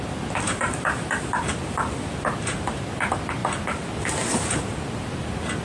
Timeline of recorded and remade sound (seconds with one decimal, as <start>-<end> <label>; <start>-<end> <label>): 0.0-3.4 remade; 3.4-4.6 recorded; 4.6-5.6 remade